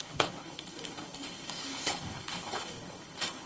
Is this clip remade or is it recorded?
remade